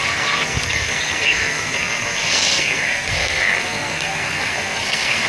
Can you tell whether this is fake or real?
fake